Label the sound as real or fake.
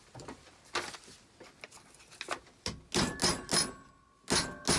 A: real